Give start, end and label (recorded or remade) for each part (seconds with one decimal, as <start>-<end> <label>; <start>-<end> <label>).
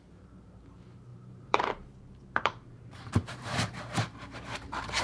0.0-5.0 remade